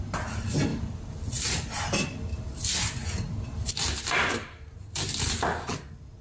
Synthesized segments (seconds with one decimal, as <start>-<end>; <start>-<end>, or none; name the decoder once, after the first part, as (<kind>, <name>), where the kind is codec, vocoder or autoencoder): none